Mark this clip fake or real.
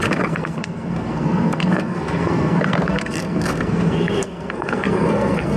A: fake